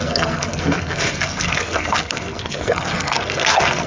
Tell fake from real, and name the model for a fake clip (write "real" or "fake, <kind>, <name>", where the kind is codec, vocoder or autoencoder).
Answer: fake, codec, SNAC